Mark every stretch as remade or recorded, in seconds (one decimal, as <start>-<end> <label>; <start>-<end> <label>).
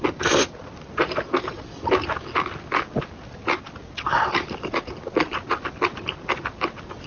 0.0-7.1 recorded